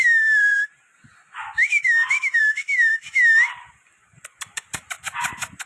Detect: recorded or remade remade